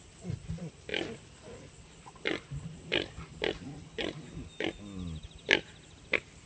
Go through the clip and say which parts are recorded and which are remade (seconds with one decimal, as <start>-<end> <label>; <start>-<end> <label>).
0.0-6.5 recorded